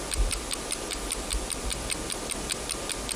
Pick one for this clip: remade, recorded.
recorded